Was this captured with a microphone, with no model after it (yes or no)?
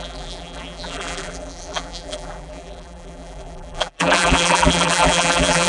no